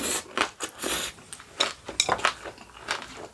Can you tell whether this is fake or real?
real